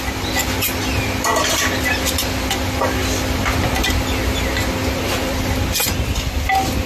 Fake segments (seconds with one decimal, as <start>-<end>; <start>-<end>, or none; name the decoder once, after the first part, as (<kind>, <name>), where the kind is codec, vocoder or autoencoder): none

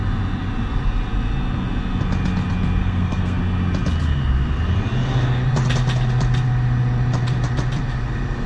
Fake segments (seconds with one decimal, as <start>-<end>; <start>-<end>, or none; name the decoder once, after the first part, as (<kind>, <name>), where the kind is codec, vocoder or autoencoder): 2.8-3.4 (codec, SNAC)

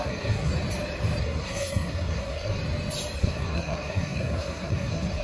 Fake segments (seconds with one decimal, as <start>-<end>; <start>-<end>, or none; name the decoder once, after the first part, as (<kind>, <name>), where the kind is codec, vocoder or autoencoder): 0.0-0.5 (codec, SNAC); 1.2-2.6; 3.2-5.2

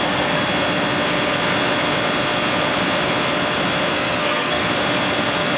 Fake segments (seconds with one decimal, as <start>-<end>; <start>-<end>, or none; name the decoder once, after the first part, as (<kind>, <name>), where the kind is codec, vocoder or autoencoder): 0.0-0.5 (codec, SNAC); 3.9-4.6

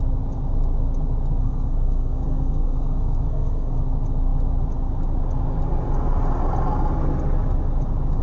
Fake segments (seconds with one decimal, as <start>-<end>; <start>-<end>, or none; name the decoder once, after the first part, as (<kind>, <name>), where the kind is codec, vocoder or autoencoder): 1.4-3.8 (codec, SNAC)

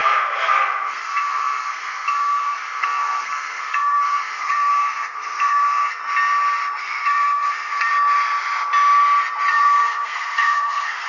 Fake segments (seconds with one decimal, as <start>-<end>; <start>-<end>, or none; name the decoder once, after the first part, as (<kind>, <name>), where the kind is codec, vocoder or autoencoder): 0.0-6.0 (codec, SNAC); 6.8-7.9; 9.5-11.1

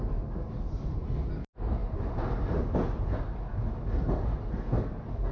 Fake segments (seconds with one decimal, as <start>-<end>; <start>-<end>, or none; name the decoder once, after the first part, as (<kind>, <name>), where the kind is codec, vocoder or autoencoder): none